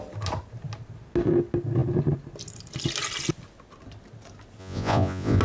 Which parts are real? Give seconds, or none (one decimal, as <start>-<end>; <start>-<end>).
0.0-4.6